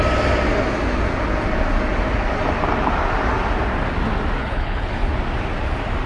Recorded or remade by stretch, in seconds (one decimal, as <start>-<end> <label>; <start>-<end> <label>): 0.0-4.4 recorded; 4.4-5.1 remade; 5.1-6.1 recorded